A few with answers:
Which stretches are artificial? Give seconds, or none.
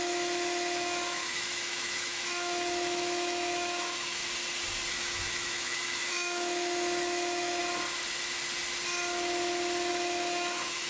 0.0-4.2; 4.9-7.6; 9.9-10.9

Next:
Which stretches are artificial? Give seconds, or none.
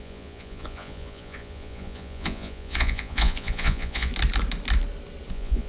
0.0-4.1; 5.3-5.7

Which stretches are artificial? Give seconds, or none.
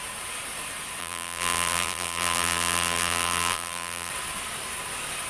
1.0-4.1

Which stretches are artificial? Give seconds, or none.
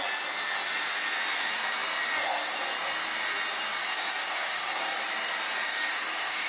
3.8-4.8; 5.7-6.5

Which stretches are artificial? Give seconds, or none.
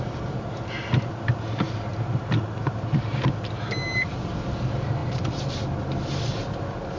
1.9-3.3; 5.0-5.5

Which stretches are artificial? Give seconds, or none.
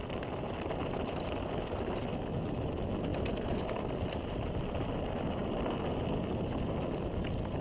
none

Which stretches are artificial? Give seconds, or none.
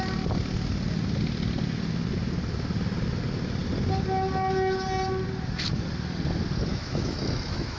6.7-7.8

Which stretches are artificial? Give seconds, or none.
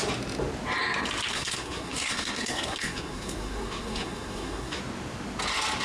1.3-4.8